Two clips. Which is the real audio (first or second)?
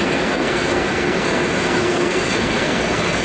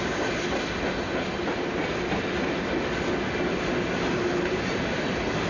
second